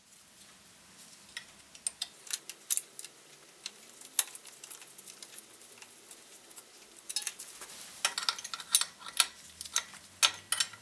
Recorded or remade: recorded